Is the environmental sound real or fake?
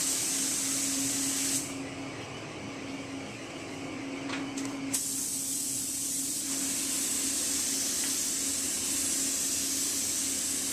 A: real